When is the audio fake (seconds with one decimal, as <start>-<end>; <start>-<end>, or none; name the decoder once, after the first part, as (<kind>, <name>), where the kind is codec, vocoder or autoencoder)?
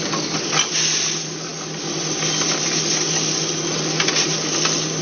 none